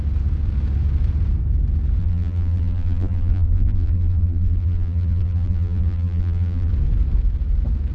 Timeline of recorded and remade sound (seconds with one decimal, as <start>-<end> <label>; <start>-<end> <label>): 0.0-2.0 recorded; 2.0-6.7 remade; 6.7-7.9 recorded